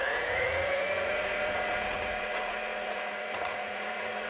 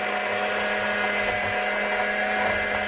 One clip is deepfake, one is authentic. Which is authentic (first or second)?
second